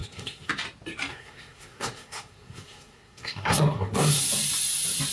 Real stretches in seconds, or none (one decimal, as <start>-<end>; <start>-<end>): 0.5-1.1; 4.2-5.1